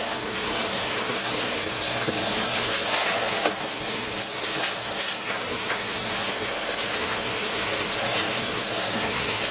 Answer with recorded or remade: remade